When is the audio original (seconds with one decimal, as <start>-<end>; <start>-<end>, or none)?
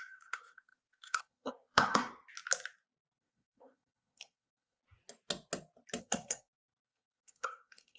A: 2.1-3.1; 4.8-6.0